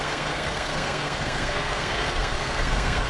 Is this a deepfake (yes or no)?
yes